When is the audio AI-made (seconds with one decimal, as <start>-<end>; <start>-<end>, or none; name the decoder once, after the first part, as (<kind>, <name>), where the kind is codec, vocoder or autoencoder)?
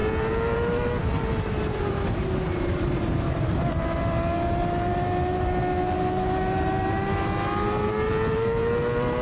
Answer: 0.0-9.2 (vocoder, BigVGAN v2)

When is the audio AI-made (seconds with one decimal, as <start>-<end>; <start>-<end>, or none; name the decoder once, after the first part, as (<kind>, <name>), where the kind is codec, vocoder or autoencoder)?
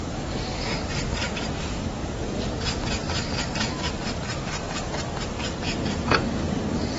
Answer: none